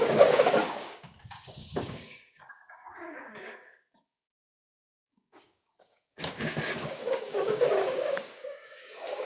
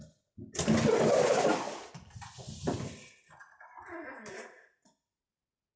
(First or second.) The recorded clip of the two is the second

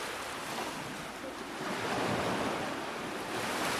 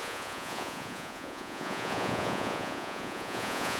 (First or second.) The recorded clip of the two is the first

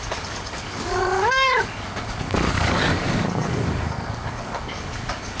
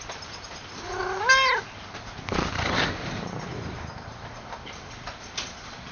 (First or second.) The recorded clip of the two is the second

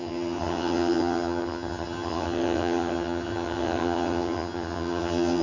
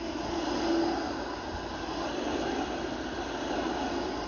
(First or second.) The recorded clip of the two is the second